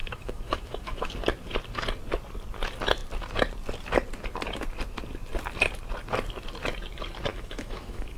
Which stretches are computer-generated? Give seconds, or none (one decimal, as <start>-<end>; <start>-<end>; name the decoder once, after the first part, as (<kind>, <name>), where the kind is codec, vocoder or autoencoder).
0.0-1.1 (autoencoder, DAC-VAE); 7.3-8.2

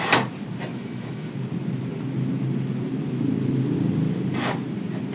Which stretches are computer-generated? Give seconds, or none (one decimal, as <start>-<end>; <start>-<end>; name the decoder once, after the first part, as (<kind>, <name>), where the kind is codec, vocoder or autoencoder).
0.7-1.3 (autoencoder, DAC-VAE)

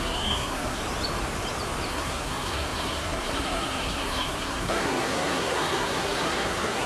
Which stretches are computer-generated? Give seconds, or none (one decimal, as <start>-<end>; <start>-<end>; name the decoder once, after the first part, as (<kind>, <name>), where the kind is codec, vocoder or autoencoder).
0.0-0.8 (codec, SNAC); 1.9-6.9

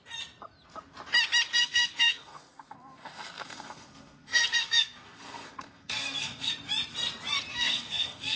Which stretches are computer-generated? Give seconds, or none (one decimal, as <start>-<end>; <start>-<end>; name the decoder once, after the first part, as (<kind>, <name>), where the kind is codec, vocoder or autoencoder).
1.5-6.5 (codec, SNAC); 7.5-8.4

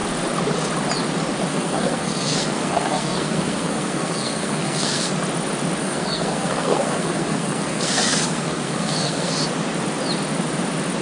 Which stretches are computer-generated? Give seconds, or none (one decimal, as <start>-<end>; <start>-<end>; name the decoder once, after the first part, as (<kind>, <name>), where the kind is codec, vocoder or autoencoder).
1.5-5.1 (codec, SNAC); 5.8-9.4

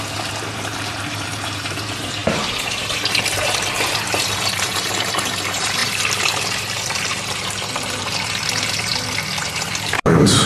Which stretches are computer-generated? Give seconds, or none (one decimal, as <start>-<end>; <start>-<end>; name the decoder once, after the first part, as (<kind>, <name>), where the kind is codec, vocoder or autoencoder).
0.0-8.9 (vocoder, BigVGAN v2); 9.4-10.5

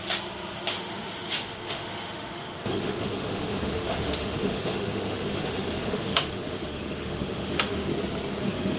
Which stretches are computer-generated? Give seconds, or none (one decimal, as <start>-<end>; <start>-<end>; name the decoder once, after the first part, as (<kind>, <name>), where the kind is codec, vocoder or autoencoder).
0.7-7.9 (autoencoder, DAC-VAE); 8.4-8.8

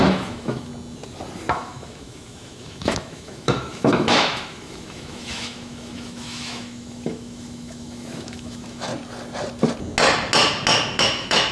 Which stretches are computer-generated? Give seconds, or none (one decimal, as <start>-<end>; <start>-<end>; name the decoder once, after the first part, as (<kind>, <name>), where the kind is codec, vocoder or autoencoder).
0.0-0.7 (autoencoder, DAC-VAE); 1.5-8.9; 11.0-11.5